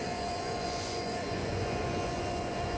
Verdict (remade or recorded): remade